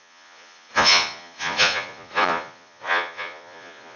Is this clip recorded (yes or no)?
no